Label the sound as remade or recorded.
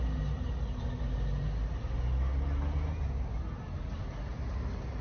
recorded